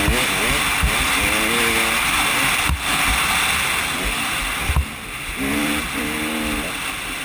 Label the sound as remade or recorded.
recorded